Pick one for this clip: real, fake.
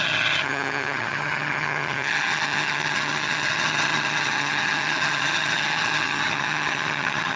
fake